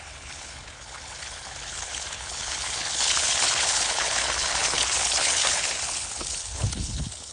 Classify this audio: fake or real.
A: fake